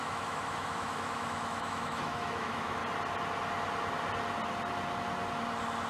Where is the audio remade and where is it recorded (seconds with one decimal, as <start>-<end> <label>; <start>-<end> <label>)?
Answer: 0.0-2.8 remade; 2.8-5.9 recorded